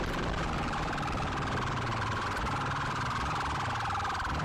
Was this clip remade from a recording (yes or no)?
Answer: yes